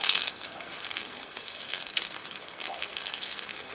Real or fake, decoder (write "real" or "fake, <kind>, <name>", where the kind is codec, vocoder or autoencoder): fake, codec, SNAC